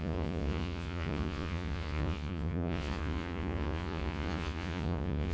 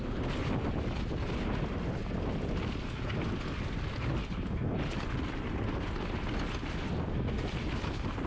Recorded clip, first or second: second